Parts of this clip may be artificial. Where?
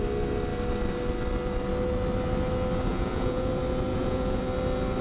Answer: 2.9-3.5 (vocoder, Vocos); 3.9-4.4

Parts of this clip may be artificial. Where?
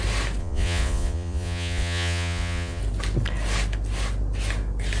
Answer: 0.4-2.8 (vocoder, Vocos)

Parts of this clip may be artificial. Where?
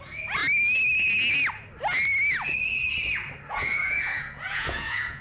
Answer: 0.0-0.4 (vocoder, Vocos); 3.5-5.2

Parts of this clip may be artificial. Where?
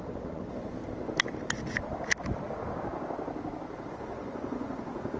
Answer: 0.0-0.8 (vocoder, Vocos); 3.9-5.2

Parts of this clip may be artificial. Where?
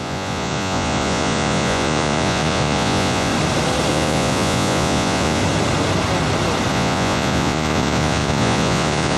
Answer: 0.0-3.3 (vocoder, Vocos); 3.9-5.4; 6.7-9.2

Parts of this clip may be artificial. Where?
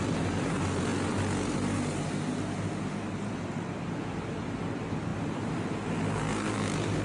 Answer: none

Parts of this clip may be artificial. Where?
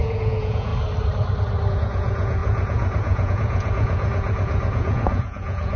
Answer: 0.0-0.7 (vocoder, Vocos); 1.7-5.8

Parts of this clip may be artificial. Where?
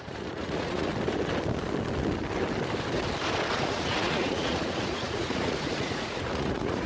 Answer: 0.0-0.9 (vocoder, Vocos); 3.5-6.9